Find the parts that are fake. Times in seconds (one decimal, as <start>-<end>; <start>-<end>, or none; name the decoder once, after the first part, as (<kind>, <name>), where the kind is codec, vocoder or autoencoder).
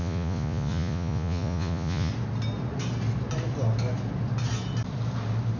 0.0-2.1 (vocoder, Vocos)